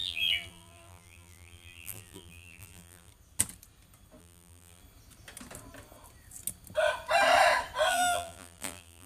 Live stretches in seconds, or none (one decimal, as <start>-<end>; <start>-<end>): 3.1-4.2; 4.8-7.9